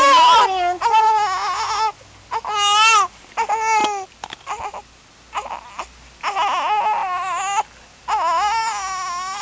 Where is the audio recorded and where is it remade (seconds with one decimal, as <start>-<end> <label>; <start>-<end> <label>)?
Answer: 0.0-9.4 recorded